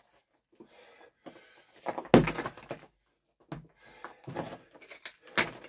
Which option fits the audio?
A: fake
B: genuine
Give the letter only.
B